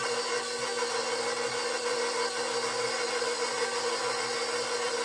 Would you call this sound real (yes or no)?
yes